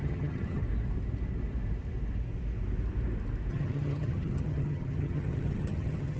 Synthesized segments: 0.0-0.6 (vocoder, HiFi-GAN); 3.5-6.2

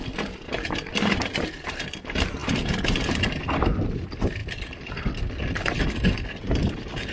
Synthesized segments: none

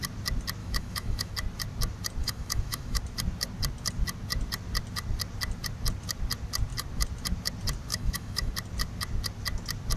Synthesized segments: 0.6-1.3 (autoencoder, DAC-VAE); 2.2-3.0; 7.9-8.5

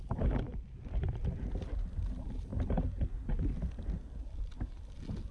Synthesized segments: none

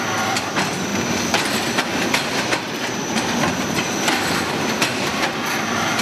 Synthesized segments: 0.0-6.0 (vocoder, BigVGAN v2)